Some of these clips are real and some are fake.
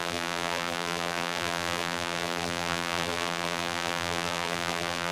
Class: fake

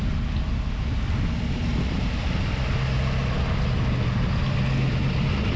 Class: real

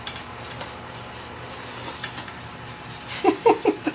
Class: fake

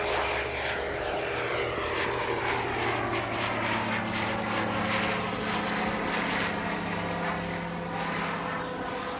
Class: real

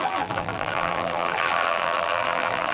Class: fake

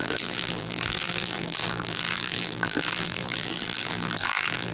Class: fake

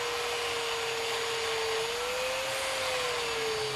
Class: real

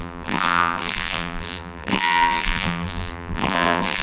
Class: fake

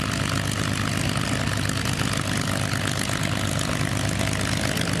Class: real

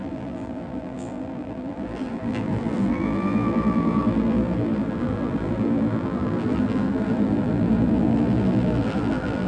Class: fake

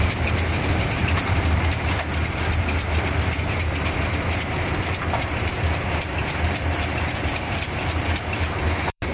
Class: fake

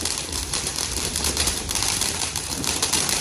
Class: fake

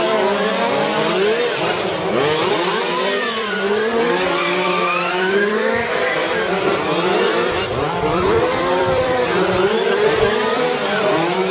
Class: fake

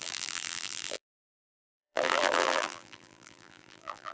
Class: fake